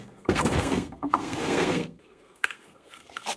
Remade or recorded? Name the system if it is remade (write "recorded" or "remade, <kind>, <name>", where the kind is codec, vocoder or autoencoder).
remade, codec, SNAC